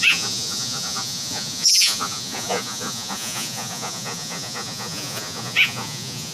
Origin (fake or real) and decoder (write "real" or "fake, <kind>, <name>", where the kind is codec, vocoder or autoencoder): fake, vocoder, Vocos